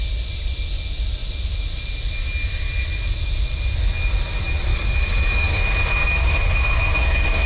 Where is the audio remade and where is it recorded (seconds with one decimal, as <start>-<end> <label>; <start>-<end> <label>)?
0.0-4.7 recorded; 4.7-5.6 remade; 5.6-7.5 recorded

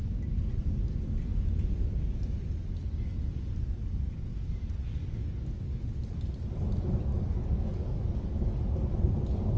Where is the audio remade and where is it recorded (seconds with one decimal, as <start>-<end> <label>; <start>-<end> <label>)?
0.0-5.0 recorded; 5.0-5.8 remade; 5.8-7.1 recorded; 7.1-8.7 remade; 8.7-9.6 recorded

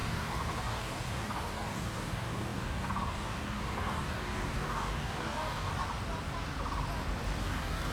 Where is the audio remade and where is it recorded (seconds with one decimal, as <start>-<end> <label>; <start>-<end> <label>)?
0.0-5.7 remade; 5.7-7.4 recorded; 7.4-7.9 remade

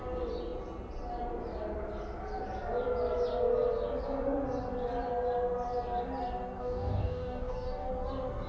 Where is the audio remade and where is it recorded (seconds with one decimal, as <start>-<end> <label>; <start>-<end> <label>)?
0.0-6.6 recorded; 6.6-7.9 remade; 7.9-8.5 recorded

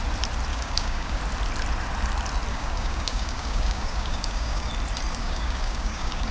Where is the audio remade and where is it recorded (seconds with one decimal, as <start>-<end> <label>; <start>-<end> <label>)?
0.0-0.5 recorded; 0.5-1.2 remade; 1.2-2.5 recorded; 2.5-4.7 remade; 4.7-5.2 recorded; 5.2-6.3 remade